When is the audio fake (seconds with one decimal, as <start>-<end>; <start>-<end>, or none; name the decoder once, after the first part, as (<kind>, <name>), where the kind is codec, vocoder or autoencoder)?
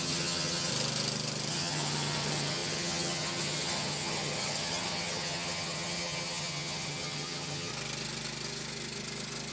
0.0-0.7 (vocoder, HiFi-GAN); 1.5-7.7